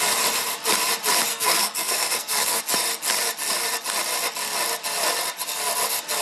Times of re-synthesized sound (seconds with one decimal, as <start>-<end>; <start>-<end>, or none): 1.3-2.6